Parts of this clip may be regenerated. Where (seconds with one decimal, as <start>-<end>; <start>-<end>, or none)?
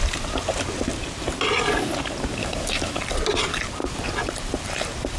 2.4-3.0